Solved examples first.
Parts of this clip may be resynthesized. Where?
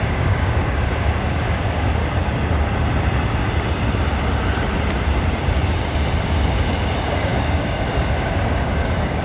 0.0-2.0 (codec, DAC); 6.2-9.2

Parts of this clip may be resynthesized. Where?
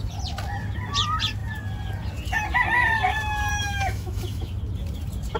3.5-4.5 (autoencoder, DAC-VAE)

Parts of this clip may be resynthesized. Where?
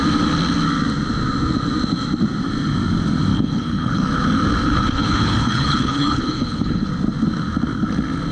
3.3-4.1 (codec, HILCodec); 4.6-6.9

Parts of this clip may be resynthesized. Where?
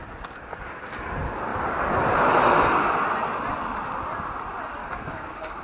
4.8-5.6 (codec, DAC)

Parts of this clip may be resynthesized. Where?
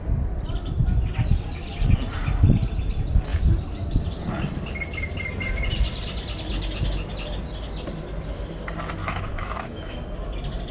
9.0-10.0 (autoencoder, DAC-VAE)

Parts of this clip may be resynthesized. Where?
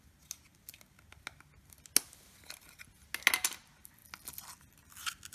none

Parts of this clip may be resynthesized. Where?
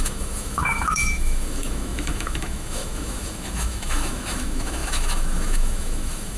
0.0-6.4 (autoencoder, DAC-VAE)